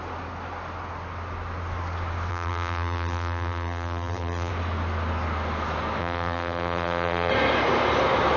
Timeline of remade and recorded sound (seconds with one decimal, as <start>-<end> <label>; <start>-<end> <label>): 0.0-2.3 recorded; 2.3-4.5 remade; 4.5-6.0 recorded; 6.0-7.3 remade; 7.3-8.4 recorded